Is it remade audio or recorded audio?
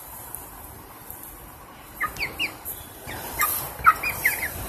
recorded